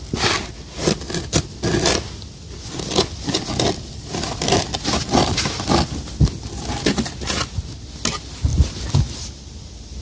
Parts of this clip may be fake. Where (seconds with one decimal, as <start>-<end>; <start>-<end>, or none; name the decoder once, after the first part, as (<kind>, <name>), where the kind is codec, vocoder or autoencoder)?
none